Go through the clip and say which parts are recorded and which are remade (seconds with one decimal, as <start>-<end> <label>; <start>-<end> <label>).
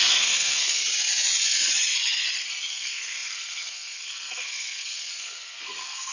0.0-0.8 remade; 0.8-2.7 recorded; 2.7-6.1 remade